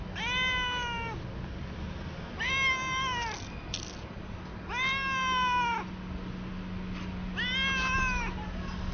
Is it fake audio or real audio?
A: real